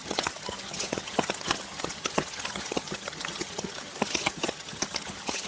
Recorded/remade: remade